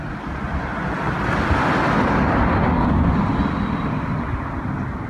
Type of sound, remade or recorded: recorded